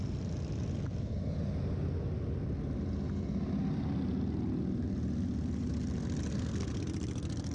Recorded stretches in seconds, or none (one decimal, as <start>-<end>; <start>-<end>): 0.0-6.3; 6.8-7.5